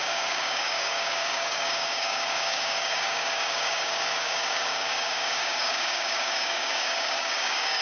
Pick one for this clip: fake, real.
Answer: fake